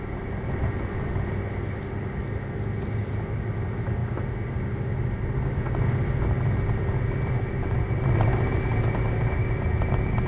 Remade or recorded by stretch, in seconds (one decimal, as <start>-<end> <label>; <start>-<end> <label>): 0.0-10.3 recorded